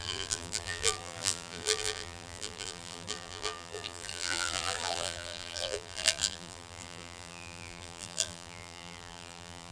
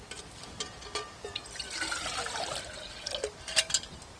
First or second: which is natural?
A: second